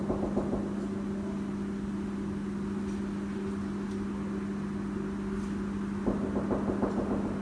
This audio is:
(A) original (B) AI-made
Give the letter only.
A